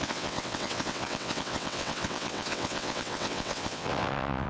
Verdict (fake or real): fake